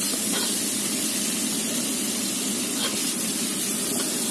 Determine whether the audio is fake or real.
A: real